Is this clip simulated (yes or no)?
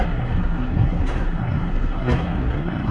yes